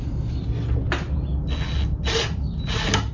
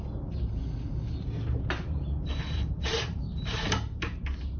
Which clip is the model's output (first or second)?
second